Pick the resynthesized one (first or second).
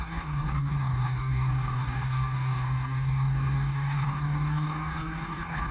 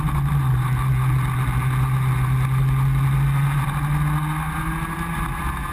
first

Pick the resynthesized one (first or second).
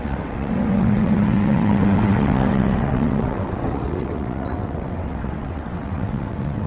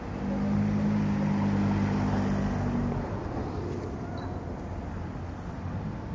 first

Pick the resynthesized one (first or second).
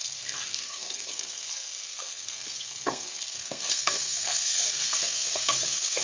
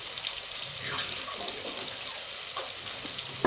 first